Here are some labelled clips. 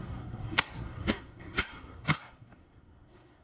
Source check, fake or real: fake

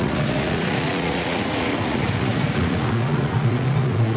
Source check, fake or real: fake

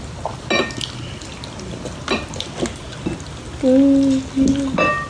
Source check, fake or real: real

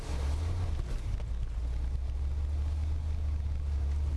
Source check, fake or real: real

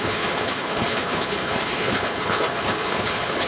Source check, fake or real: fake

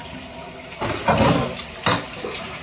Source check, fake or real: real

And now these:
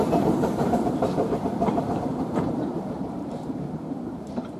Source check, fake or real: fake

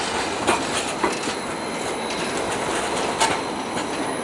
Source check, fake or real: real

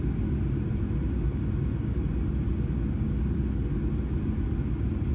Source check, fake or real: real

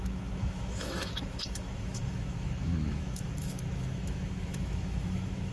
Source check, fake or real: fake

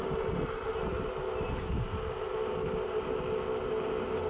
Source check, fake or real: real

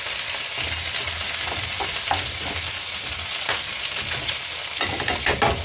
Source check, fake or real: real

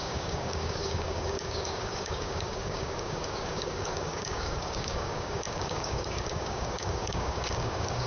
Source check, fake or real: fake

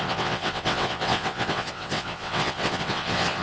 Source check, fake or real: fake